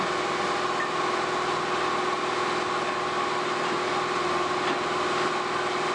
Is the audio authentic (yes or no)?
yes